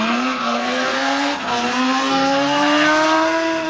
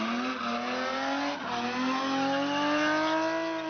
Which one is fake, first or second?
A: first